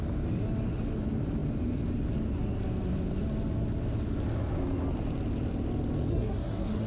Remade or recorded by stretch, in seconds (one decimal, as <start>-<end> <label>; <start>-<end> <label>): 0.0-6.1 recorded; 6.1-6.9 remade